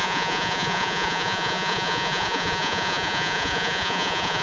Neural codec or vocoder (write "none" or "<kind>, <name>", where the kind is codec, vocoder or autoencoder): vocoder, Vocos